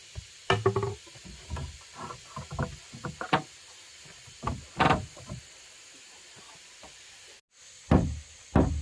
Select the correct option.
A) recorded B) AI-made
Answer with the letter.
A